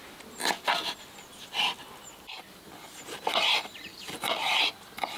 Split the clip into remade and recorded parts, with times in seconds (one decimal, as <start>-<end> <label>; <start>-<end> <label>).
0.0-2.8 recorded; 2.8-4.6 remade; 4.6-5.2 recorded

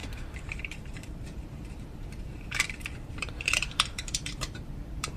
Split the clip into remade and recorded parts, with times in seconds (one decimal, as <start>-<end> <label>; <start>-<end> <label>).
0.0-5.2 remade